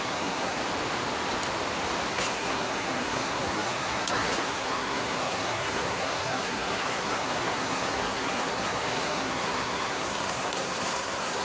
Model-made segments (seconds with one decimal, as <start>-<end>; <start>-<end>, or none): 0.0-0.6; 2.1-11.4